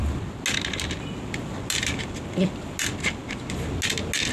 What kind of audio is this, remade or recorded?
recorded